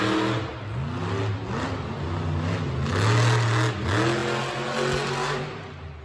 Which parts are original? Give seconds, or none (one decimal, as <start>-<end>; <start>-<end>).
0.0-6.0